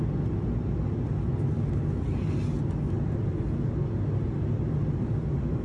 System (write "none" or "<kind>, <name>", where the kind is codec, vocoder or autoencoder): none